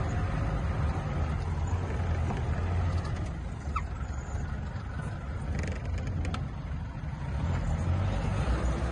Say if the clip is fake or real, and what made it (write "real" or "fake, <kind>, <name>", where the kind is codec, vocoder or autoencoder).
real